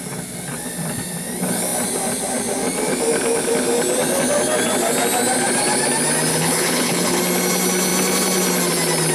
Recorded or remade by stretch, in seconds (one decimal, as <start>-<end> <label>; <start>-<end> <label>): 0.0-6.3 recorded; 6.3-7.2 remade; 7.2-9.1 recorded